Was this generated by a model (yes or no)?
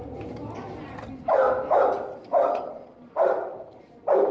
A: no